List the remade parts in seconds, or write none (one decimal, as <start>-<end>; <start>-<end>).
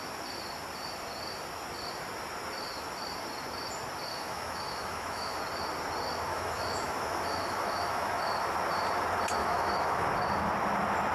4.1-5.4; 6.3-8.2; 9.4-10.1